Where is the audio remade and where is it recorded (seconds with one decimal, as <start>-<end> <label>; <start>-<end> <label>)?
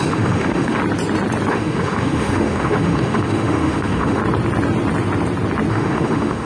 0.0-0.8 remade; 0.8-1.5 recorded; 1.5-4.2 remade; 4.2-5.7 recorded; 5.7-6.5 remade